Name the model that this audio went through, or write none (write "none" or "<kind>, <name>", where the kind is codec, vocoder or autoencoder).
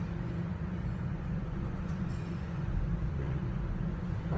vocoder, Vocos